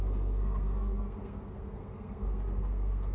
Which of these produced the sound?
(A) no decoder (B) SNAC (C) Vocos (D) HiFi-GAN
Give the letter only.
B